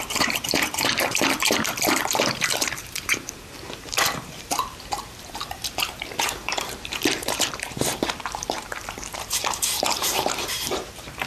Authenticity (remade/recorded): remade